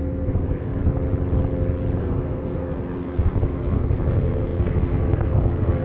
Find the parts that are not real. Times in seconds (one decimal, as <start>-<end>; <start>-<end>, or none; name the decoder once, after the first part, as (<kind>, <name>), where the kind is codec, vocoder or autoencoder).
0.0-0.8 (codec, SNAC); 2.0-5.8